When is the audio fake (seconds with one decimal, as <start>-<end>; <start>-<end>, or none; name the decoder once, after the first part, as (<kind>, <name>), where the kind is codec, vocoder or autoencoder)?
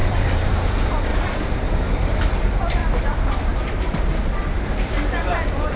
0.0-0.7 (vocoder, BigVGAN v2); 1.1-1.7; 2.8-4.9